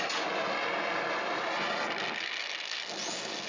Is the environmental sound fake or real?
real